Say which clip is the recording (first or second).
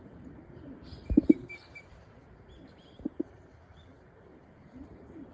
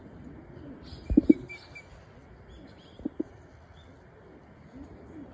second